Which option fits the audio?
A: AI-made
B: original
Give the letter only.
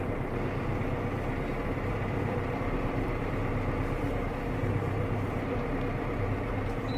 A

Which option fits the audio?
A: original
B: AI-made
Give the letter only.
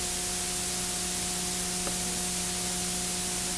A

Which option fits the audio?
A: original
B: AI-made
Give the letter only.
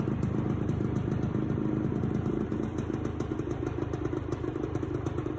B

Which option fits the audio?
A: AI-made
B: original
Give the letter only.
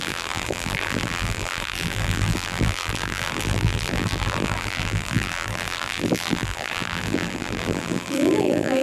A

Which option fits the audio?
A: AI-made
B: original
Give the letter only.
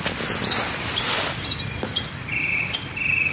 A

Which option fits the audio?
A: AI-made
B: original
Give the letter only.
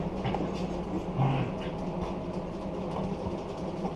B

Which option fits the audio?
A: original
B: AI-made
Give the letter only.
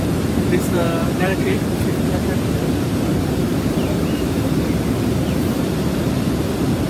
B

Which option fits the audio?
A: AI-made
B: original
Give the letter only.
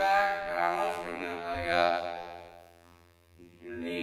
A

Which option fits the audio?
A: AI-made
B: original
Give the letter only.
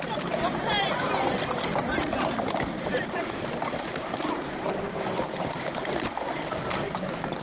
A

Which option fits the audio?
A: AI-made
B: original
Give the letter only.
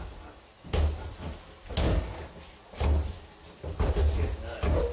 B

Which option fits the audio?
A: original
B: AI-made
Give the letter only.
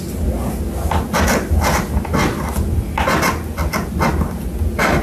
A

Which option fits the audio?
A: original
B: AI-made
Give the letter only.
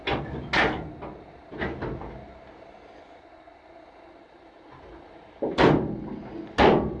A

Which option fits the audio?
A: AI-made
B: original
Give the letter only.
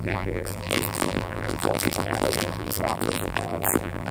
A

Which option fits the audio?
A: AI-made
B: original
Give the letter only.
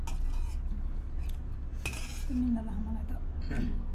B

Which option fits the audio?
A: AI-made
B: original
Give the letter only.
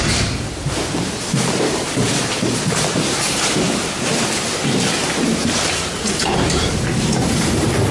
A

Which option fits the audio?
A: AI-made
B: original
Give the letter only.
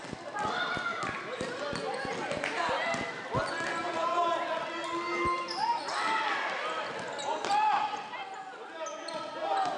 B